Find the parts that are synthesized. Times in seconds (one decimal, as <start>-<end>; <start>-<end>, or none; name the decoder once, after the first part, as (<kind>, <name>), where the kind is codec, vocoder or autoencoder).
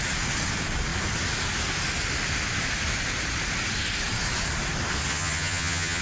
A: 5.1-6.0 (vocoder, HiFi-GAN)